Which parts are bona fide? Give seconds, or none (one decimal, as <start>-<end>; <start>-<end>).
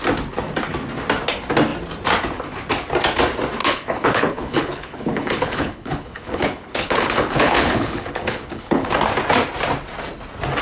0.0-3.6; 8.9-10.6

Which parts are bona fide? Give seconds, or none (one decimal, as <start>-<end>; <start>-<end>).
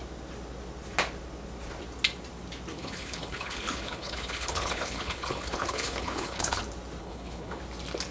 0.0-2.7; 6.6-7.0; 7.6-8.1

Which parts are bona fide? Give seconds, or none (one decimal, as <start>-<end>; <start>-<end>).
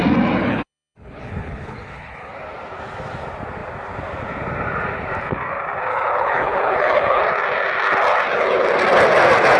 0.0-0.4; 2.3-5.9; 7.2-9.6